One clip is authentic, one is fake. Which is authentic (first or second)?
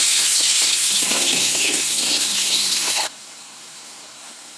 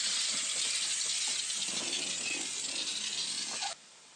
second